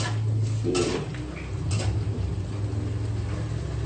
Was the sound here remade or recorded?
recorded